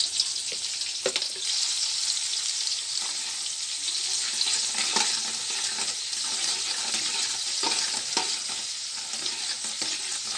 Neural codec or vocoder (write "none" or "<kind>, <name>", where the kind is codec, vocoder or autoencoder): none